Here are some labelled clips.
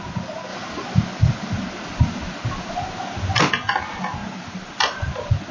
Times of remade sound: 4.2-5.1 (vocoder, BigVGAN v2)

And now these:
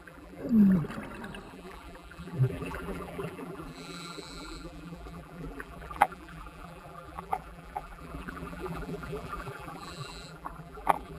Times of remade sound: 0.0-0.4 (vocoder, BigVGAN v2); 1.5-11.2

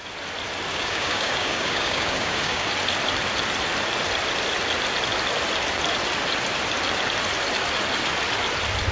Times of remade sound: 0.7-2.7 (codec, DAC)

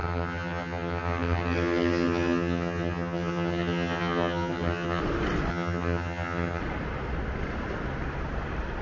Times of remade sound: 0.0-5.0 (vocoder, HiFi-GAN); 5.5-6.6

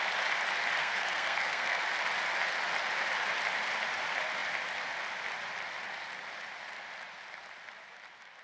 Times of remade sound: 0.8-1.8 (codec, SNAC)

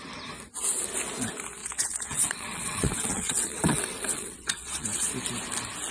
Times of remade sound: 1.6-5.1 (vocoder, WaveNeXt)

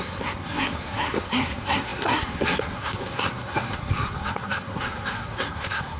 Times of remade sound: 0.0-6.0 (codec, SNAC)

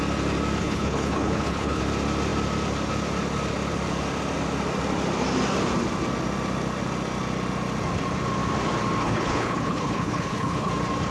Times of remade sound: 0.6-1.8 (codec, HILCodec); 9.0-10.7